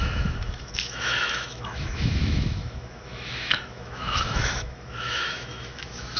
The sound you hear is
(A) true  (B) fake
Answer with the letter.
B